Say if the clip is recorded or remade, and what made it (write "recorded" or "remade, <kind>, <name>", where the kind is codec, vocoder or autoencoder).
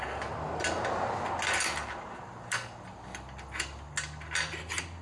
recorded